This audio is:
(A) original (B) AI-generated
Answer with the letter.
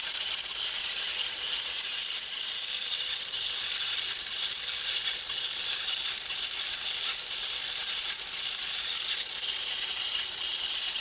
B